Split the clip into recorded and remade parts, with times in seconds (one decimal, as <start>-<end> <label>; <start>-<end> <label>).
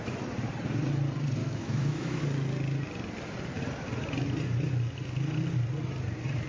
0.0-1.4 recorded; 1.4-2.2 remade; 2.2-6.5 recorded